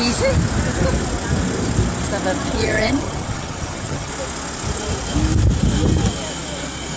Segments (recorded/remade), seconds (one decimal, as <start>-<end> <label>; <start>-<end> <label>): 0.0-2.5 recorded; 2.5-4.1 remade; 4.1-7.0 recorded